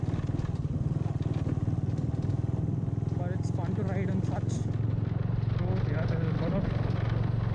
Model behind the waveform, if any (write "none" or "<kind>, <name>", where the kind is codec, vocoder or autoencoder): none